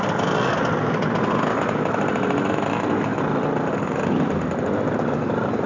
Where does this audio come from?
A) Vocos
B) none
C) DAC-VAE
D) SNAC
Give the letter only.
B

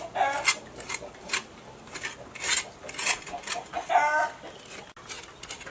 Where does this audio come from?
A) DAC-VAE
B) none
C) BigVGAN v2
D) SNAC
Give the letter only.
B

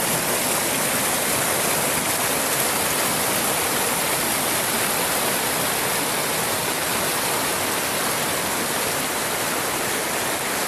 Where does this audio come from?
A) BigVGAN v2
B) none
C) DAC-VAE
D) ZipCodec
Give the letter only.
B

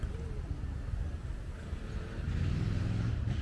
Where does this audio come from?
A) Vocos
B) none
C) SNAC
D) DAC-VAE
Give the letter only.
B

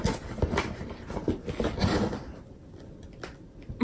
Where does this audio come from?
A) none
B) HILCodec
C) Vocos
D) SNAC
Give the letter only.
A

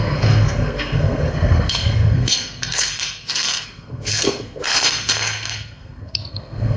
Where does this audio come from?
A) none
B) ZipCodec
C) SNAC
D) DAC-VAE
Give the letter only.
C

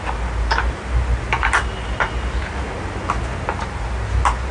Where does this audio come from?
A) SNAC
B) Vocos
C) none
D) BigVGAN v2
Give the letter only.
C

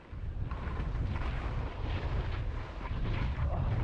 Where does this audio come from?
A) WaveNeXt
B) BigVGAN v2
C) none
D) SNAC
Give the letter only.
C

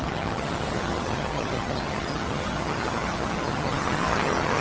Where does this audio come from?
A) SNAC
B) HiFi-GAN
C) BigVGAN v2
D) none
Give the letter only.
B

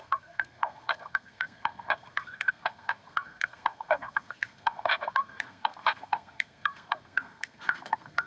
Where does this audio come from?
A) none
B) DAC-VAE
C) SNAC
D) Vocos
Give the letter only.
C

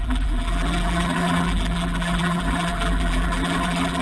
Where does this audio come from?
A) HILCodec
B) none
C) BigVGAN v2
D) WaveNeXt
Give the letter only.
C